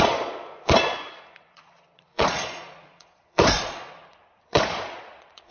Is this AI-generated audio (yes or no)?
yes